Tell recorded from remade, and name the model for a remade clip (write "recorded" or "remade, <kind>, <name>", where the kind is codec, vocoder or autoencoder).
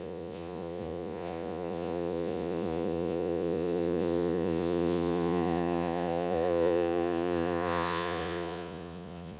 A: remade, vocoder, Vocos